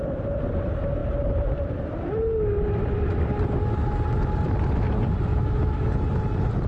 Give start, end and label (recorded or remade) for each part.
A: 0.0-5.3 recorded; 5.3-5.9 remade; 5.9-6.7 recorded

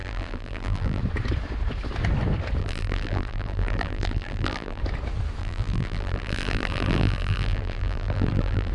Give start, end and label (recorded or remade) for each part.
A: 0.0-1.0 remade; 1.0-2.6 recorded; 2.6-4.8 remade; 4.8-5.4 recorded; 5.4-8.7 remade

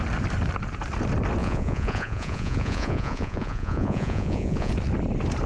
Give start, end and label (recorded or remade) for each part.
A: 0.0-1.4 recorded; 1.4-4.7 remade; 4.7-5.5 recorded

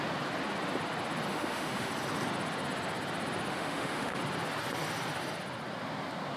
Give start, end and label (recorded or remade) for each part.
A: 0.0-1.3 recorded; 1.3-1.9 remade; 1.9-3.5 recorded; 3.5-4.2 remade; 4.2-6.4 recorded

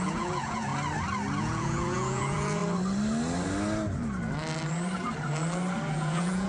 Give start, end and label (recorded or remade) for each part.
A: 0.0-0.7 remade; 0.7-1.4 recorded; 1.4-2.6 remade; 2.6-5.9 recorded; 5.9-6.5 remade

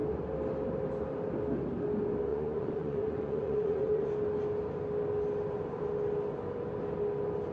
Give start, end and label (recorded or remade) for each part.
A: 0.0-2.3 recorded; 2.3-4.1 remade; 4.1-7.5 recorded